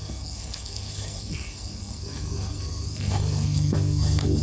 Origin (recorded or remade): remade